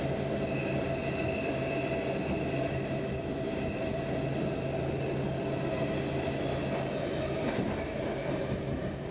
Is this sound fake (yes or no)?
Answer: no